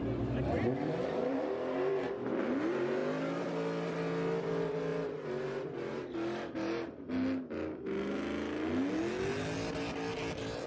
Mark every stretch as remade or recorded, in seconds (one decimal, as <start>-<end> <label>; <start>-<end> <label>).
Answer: 0.0-0.5 recorded; 0.5-1.9 remade; 1.9-3.0 recorded; 3.0-3.5 remade; 3.5-4.9 recorded; 4.9-6.0 remade; 6.0-10.7 recorded